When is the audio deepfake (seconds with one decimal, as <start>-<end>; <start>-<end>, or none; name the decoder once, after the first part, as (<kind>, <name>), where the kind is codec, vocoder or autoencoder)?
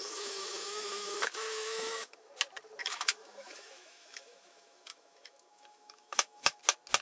0.0-2.3 (autoencoder, DAC-VAE); 2.8-6.6